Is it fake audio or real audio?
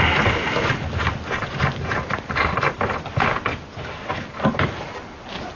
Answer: real